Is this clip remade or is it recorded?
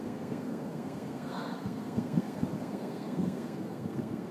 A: remade